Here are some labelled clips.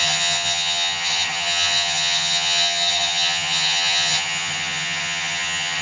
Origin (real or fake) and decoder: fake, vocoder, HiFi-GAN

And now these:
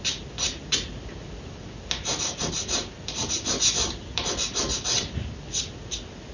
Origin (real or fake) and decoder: real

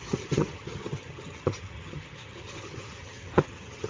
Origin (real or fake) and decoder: fake, vocoder, HiFi-GAN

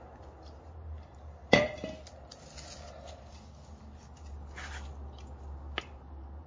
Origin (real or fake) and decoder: real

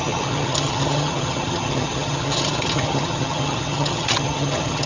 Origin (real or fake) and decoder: fake, vocoder, HiFi-GAN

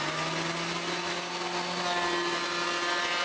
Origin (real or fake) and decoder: real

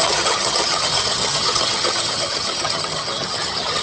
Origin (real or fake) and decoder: fake, vocoder, HiFi-GAN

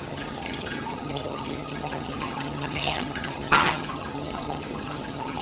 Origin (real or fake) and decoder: fake, vocoder, HiFi-GAN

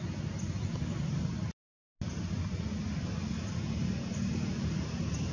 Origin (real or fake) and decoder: real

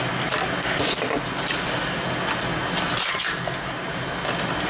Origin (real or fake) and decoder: real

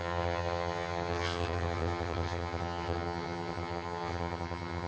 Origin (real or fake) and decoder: fake, vocoder, HiFi-GAN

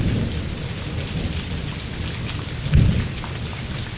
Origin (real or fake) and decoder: real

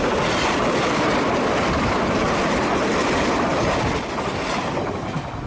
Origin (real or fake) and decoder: real